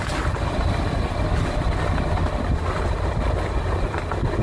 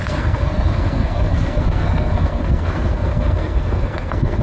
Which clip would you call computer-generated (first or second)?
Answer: second